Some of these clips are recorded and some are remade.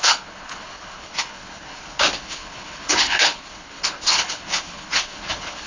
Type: remade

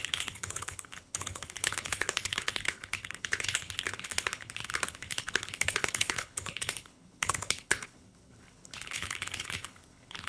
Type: remade